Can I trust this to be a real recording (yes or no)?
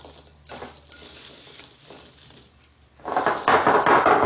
yes